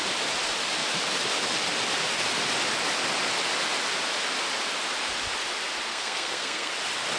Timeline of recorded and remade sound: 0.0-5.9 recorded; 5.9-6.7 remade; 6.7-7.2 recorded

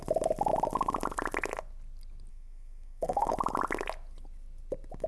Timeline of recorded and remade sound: 0.0-2.3 recorded; 2.3-3.3 remade; 3.3-5.1 recorded

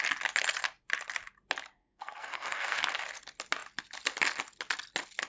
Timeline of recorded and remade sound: 0.0-1.8 recorded; 1.8-2.8 remade; 2.8-5.3 recorded